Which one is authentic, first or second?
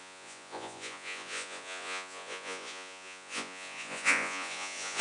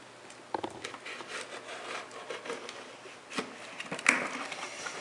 second